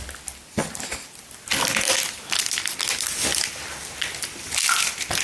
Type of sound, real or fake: real